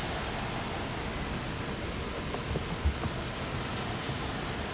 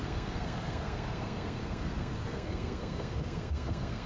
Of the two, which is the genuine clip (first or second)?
first